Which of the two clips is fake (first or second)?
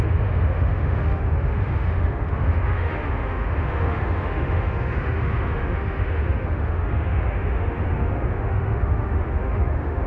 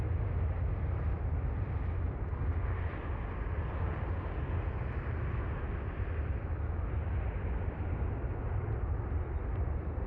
first